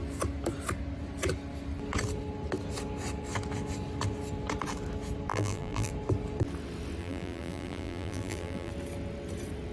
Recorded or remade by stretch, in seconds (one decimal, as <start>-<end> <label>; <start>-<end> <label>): 0.0-5.3 recorded; 5.3-5.9 remade; 5.9-7.0 recorded; 7.0-8.7 remade; 8.7-9.7 recorded